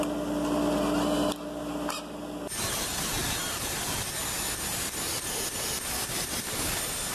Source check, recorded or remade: recorded